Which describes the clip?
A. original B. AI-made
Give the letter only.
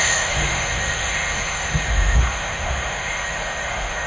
B